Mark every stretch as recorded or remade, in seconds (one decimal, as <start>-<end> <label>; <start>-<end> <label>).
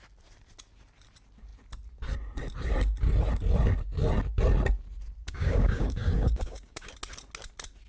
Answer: 0.0-5.2 recorded; 5.2-6.9 remade; 6.9-7.9 recorded